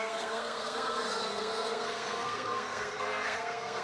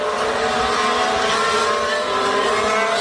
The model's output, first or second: first